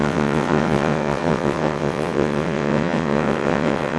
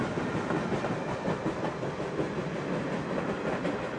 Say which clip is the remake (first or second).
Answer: first